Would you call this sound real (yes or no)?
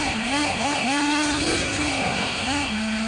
no